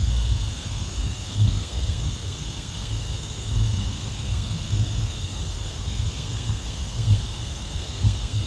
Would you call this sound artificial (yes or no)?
yes